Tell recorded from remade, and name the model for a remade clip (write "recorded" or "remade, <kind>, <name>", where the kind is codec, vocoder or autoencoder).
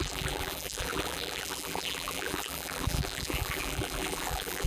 remade, vocoder, BigVGAN v2